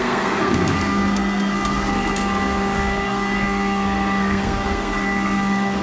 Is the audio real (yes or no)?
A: no